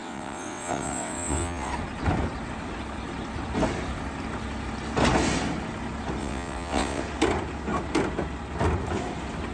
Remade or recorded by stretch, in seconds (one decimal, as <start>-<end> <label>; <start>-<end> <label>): 0.0-1.7 remade; 1.7-6.2 recorded; 6.2-7.0 remade; 7.0-9.5 recorded

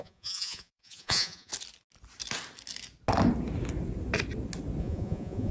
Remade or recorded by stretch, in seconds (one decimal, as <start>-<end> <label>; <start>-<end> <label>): 0.0-1.5 remade; 1.5-4.8 recorded; 4.8-5.5 remade

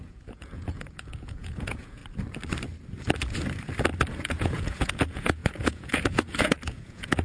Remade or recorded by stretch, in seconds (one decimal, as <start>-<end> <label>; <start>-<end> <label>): 0.0-2.0 remade; 2.0-4.1 recorded; 4.1-7.2 remade

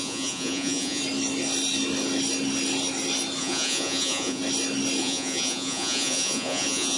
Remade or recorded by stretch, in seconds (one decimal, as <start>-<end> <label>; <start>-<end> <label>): 0.0-1.0 remade; 1.0-3.4 recorded; 3.4-4.4 remade; 4.4-5.0 recorded; 5.0-7.0 remade

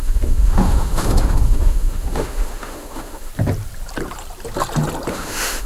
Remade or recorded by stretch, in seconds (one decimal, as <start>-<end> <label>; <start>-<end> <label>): 0.0-3.3 remade; 3.3-5.1 recorded; 5.1-5.7 remade